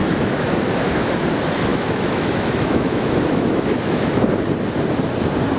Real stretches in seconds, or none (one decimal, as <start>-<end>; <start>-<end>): 1.1-1.7; 4.2-5.6